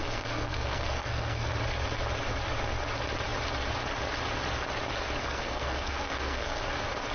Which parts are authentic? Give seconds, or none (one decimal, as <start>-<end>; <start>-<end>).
1.5-5.2; 6.6-7.1